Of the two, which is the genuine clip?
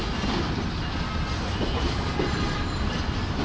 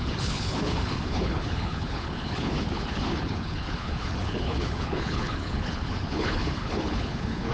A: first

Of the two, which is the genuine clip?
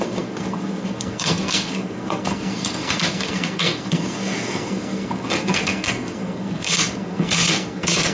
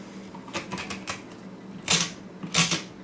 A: second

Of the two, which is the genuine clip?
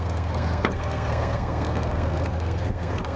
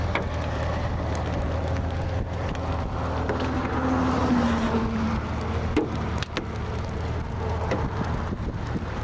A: second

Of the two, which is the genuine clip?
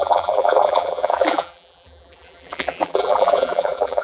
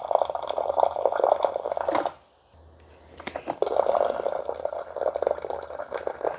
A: second